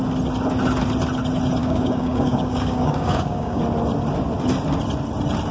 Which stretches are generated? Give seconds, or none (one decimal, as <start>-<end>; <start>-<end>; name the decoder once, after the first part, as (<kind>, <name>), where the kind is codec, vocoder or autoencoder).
1.6-3.6 (codec, DAC)